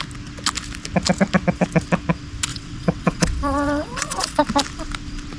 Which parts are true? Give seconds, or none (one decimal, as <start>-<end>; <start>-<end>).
0.0-2.5; 4.4-5.4